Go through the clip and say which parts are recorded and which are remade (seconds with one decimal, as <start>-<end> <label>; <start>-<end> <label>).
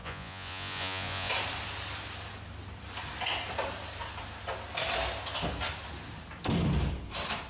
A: 0.0-1.3 remade; 1.3-7.5 recorded